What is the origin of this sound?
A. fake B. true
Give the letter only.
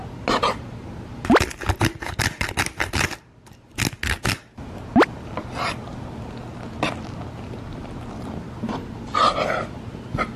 B